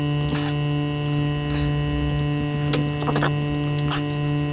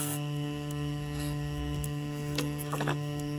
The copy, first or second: second